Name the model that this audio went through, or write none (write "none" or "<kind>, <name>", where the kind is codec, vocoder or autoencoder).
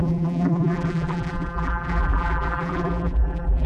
vocoder, BigVGAN v2